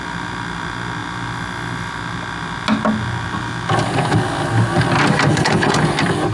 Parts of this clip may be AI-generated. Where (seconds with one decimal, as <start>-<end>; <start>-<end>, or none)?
5.3-5.8